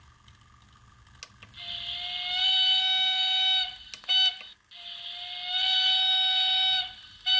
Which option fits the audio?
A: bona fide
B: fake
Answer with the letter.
A